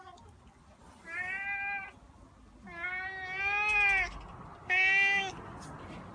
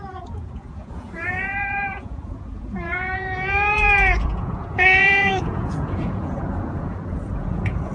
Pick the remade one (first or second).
second